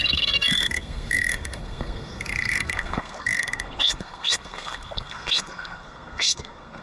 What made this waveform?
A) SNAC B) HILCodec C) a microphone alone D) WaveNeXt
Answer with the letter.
A